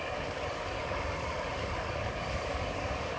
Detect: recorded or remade remade